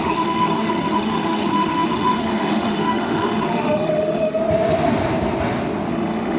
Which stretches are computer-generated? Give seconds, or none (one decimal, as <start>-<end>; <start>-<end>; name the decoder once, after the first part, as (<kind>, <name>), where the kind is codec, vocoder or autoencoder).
0.0-4.4 (autoencoder, DAC-VAE); 5.9-6.4